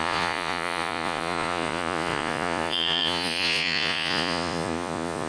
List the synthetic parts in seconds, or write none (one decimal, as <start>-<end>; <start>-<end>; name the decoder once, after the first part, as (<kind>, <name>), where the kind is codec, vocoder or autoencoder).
0.0-5.3 (vocoder, Vocos)